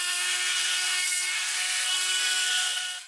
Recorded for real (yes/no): no